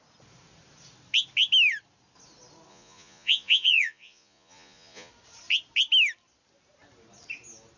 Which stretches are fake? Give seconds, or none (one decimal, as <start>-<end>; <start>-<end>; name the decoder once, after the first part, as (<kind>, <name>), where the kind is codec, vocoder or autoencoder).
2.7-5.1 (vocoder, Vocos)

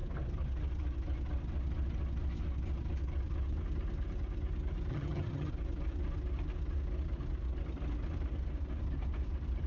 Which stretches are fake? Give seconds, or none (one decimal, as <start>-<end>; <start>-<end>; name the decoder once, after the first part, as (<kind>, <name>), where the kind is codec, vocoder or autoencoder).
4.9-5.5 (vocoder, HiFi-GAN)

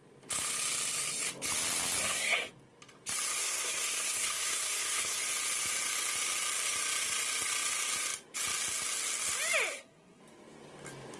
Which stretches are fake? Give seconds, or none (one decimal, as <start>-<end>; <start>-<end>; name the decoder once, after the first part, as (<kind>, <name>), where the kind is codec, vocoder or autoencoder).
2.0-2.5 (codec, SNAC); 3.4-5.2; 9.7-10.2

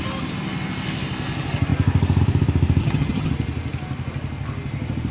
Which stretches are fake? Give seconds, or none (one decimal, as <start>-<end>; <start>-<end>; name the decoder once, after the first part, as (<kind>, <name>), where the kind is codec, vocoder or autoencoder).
2.8-3.3 (vocoder, HiFi-GAN)